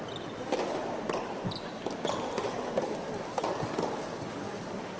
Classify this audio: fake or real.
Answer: real